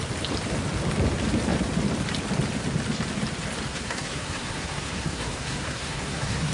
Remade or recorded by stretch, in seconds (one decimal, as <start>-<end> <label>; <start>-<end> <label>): 0.0-3.7 recorded; 3.7-6.5 remade